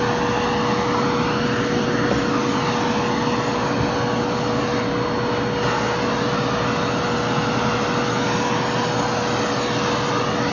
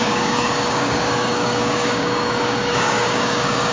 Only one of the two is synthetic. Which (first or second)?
second